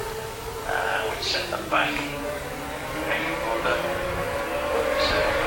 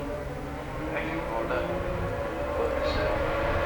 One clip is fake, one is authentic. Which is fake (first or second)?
first